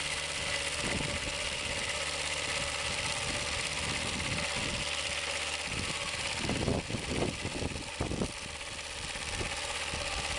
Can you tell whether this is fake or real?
real